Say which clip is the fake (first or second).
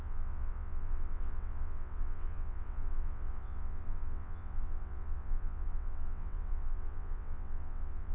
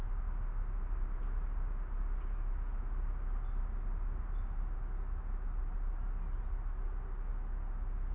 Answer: first